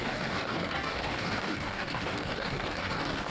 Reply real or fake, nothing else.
fake